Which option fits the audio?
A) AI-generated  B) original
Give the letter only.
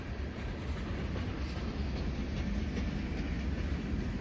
B